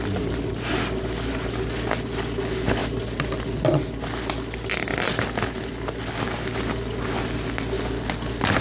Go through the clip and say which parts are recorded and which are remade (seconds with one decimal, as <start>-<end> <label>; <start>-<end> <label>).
0.0-8.6 recorded